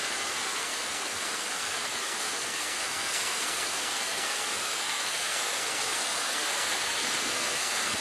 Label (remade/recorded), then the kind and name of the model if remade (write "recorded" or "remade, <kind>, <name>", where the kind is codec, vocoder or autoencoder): remade, codec, SNAC